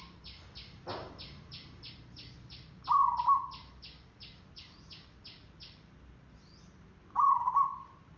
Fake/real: real